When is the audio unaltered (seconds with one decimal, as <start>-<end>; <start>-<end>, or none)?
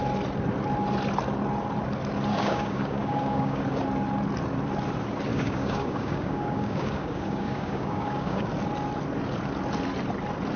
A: 0.0-2.3; 3.6-5.3; 8.5-10.6